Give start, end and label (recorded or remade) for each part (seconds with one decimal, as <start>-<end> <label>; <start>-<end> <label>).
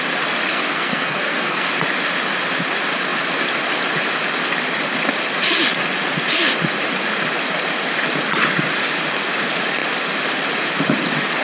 0.0-0.5 recorded; 0.5-1.7 remade; 1.7-11.4 recorded